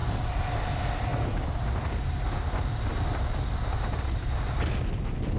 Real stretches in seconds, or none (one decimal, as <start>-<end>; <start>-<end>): 0.7-1.1; 2.7-5.4